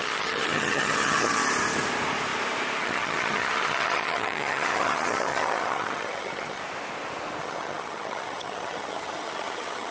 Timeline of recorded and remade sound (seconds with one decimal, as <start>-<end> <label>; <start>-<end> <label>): 0.0-1.4 remade; 1.4-2.8 recorded; 2.8-6.6 remade; 6.6-7.4 recorded; 7.4-9.9 remade